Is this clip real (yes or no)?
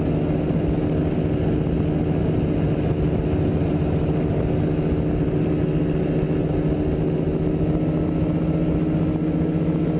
yes